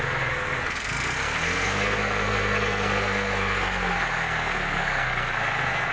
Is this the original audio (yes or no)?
no